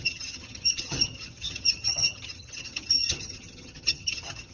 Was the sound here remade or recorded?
remade